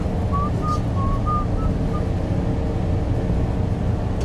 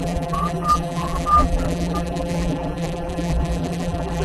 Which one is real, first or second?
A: first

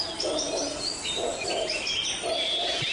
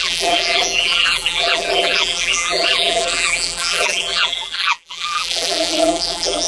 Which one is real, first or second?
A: first